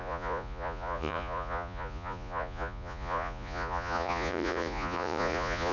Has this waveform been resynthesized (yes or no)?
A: yes